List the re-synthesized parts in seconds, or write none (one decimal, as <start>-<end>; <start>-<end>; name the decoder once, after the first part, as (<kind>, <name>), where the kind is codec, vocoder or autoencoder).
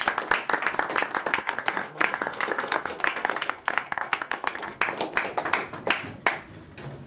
1.3-4.8 (codec, SNAC)